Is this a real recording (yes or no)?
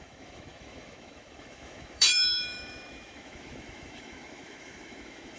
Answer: no